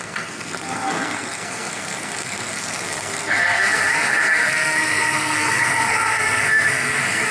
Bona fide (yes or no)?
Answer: no